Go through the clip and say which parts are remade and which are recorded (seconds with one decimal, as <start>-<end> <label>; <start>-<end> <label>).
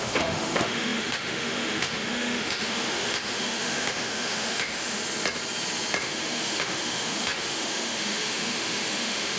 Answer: 0.0-5.0 remade; 5.0-6.0 recorded; 6.0-9.4 remade